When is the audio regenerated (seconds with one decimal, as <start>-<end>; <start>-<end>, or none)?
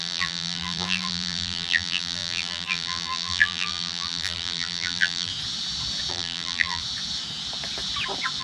0.0-5.3; 6.1-6.8